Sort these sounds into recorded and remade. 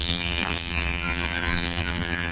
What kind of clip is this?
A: remade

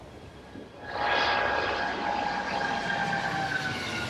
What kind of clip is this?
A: recorded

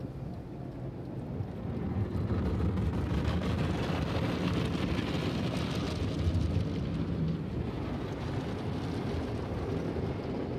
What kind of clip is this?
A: recorded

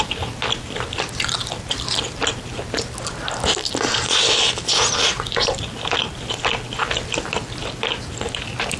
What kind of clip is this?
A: recorded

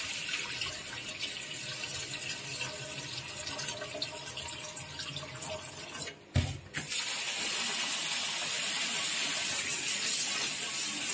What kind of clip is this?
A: recorded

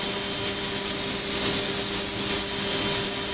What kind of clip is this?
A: recorded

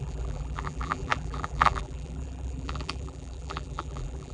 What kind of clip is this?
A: remade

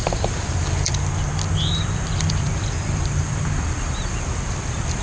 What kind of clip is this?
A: remade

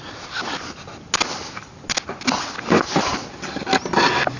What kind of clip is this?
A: recorded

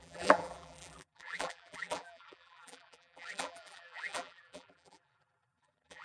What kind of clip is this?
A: remade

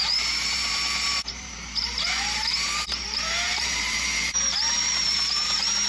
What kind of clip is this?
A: remade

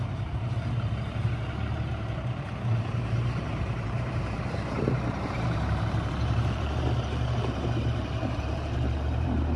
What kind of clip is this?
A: remade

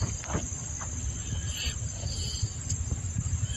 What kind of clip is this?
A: recorded